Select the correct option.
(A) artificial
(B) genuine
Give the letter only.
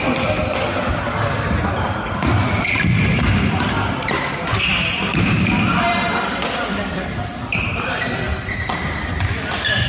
B